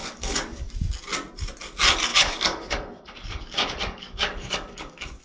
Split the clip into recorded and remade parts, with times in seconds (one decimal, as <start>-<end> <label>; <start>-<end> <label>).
0.0-0.7 remade; 0.7-2.1 recorded; 2.1-5.2 remade